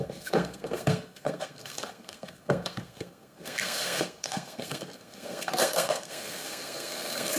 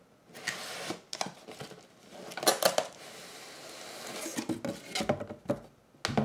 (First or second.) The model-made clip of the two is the first